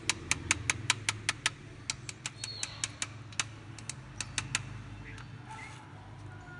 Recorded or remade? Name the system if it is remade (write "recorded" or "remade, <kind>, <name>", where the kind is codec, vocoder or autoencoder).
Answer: recorded